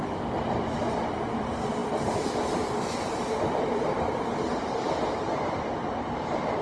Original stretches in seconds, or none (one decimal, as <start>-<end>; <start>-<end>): 4.3-5.0